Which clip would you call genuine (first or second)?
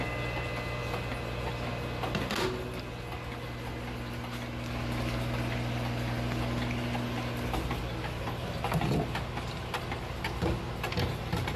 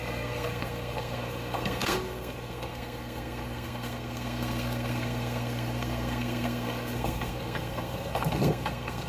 first